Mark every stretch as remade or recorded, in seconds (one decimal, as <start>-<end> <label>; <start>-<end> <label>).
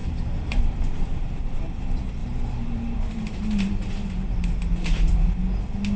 0.0-1.6 remade; 1.6-2.2 recorded; 2.2-5.3 remade; 5.3-6.0 recorded